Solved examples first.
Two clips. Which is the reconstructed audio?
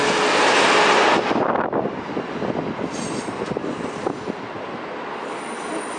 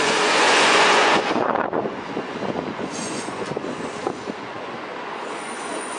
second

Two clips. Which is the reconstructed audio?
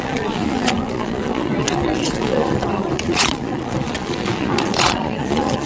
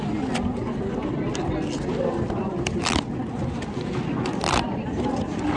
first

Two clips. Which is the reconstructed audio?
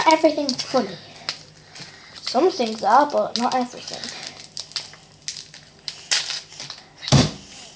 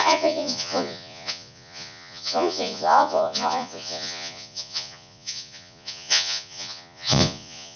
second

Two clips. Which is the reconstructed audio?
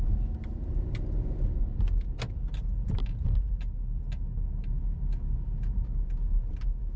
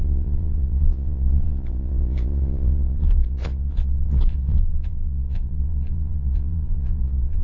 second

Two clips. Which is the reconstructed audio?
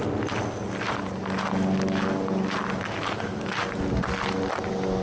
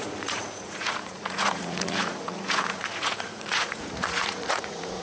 second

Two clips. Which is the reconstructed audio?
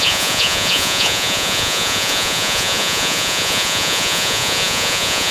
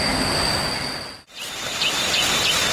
first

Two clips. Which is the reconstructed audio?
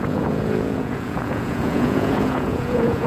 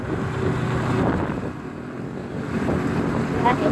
first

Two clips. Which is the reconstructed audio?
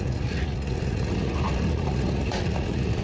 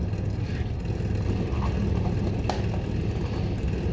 first